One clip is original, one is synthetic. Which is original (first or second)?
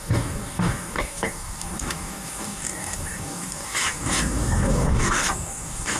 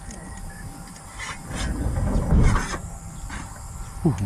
second